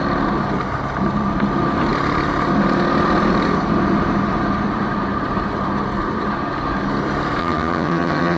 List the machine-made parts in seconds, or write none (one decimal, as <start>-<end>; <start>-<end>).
7.4-8.4

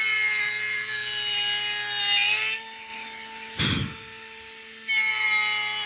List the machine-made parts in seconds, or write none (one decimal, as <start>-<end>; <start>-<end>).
none